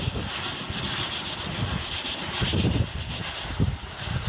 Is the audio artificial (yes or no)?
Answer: no